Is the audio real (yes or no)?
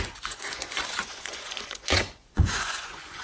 no